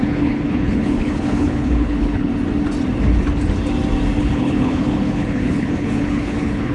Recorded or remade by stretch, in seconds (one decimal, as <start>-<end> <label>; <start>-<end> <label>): 0.0-2.3 remade; 2.3-4.2 recorded; 4.2-6.7 remade